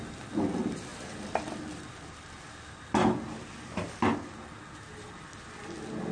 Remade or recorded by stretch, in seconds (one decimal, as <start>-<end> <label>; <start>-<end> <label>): 0.0-0.9 recorded; 0.9-4.6 remade; 4.6-6.1 recorded